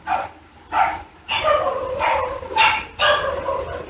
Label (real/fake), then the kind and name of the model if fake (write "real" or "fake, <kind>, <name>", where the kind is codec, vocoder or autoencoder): real